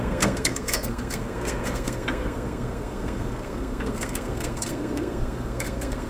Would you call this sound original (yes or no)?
no